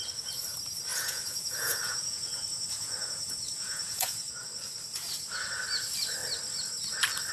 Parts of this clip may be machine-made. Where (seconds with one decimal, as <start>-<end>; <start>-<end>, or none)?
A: 0.9-4.3